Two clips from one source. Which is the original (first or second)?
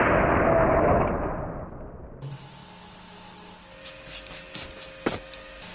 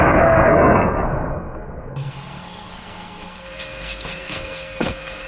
first